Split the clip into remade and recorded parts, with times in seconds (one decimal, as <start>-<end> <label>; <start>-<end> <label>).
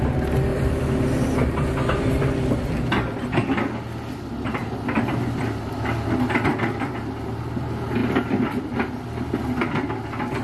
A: 0.0-0.5 recorded; 0.5-2.2 remade; 2.2-10.4 recorded